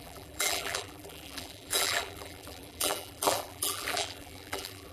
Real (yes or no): no